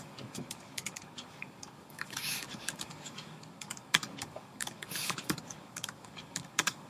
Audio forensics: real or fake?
fake